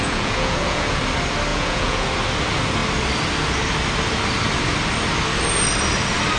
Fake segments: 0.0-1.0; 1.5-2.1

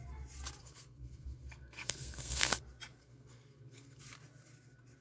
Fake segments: 0.6-2.6; 3.0-4.0

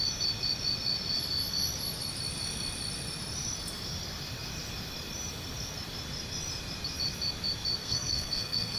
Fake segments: 7.8-8.8